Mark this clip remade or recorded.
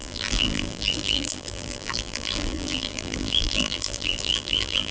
remade